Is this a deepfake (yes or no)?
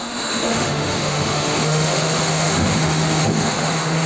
yes